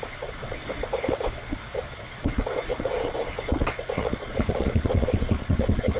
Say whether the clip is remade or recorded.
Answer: remade